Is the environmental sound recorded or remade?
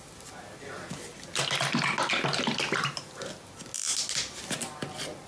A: recorded